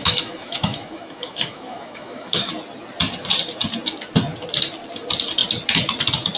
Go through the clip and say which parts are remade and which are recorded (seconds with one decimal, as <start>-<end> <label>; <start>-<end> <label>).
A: 0.0-2.5 remade; 2.5-6.4 recorded